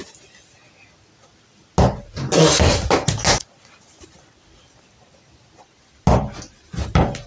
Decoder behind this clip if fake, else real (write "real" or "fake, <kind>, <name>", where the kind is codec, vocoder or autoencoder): real